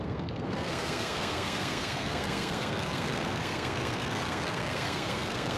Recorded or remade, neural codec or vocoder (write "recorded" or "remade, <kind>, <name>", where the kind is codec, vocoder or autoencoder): remade, codec, SNAC